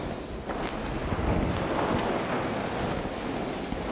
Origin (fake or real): real